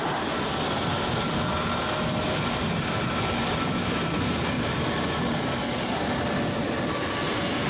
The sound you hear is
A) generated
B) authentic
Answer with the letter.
B